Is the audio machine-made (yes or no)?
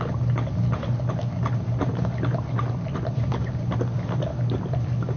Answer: no